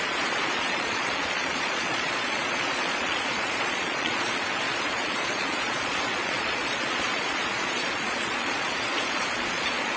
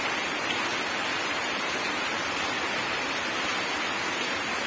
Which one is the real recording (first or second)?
second